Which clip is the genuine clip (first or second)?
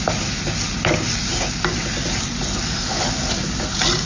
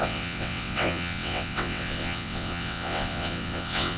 first